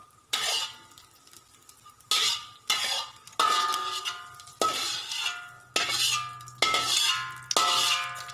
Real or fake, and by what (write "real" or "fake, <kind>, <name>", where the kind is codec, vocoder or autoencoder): real